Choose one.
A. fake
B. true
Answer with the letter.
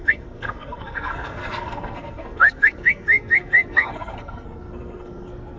A